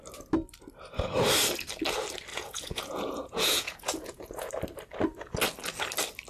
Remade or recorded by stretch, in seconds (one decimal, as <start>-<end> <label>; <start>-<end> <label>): 0.0-2.3 recorded; 2.3-4.5 remade; 4.5-6.3 recorded